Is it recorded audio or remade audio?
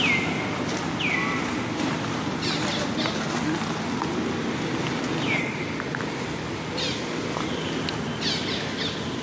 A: recorded